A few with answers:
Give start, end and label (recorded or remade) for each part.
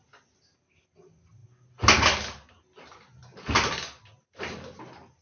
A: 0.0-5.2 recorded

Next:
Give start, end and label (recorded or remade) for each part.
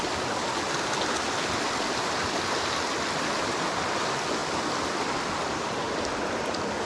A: 0.0-6.9 recorded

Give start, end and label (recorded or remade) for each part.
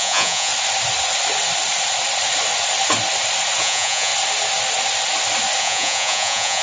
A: 0.0-0.5 remade; 0.5-3.6 recorded; 3.6-4.1 remade; 4.1-5.6 recorded; 5.6-6.6 remade